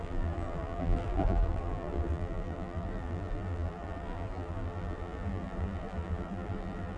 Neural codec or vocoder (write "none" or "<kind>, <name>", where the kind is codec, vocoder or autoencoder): vocoder, BigVGAN v2